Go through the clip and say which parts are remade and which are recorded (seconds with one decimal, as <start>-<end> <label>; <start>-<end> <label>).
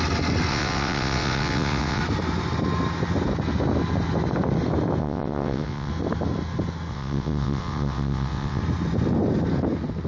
0.0-0.5 recorded; 0.5-2.0 remade; 2.0-5.0 recorded; 5.0-5.9 remade; 5.9-6.9 recorded; 6.9-8.6 remade; 8.6-10.1 recorded